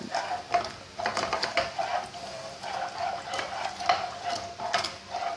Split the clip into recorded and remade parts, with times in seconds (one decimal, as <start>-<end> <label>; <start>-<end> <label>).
0.0-5.4 recorded